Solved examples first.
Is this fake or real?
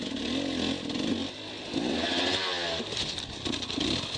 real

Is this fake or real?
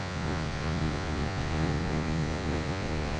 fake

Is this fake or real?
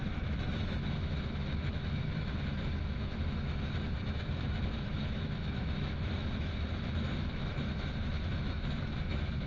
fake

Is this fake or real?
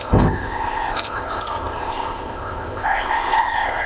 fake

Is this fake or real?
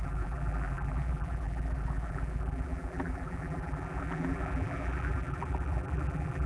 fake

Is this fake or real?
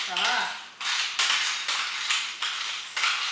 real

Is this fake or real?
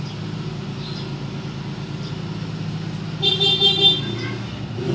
real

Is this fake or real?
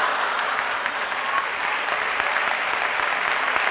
real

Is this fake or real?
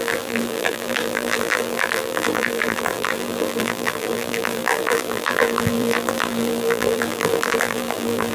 fake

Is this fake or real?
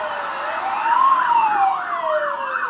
real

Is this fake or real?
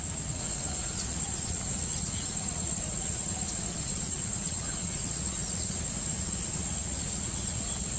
fake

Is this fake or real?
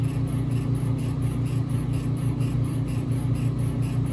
real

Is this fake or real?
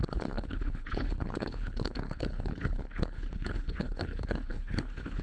fake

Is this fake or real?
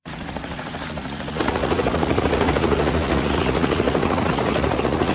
fake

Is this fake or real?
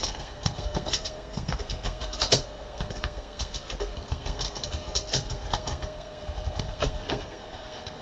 fake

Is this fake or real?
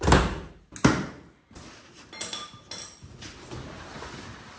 real